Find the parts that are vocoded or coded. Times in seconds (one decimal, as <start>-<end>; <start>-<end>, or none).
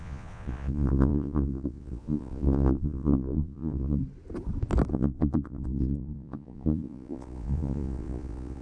0.0-4.0; 4.9-8.6